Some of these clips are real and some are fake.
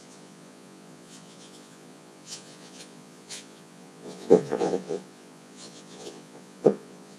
fake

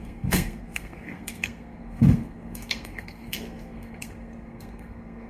fake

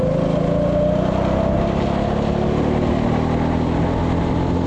real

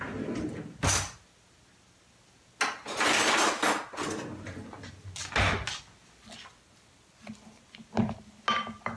real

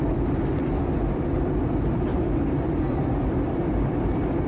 fake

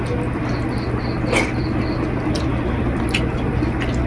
real